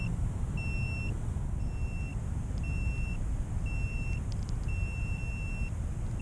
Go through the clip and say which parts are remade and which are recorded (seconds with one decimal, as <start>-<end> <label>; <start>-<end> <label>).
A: 0.0-6.2 recorded